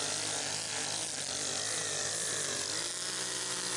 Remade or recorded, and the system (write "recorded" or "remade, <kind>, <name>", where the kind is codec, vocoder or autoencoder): recorded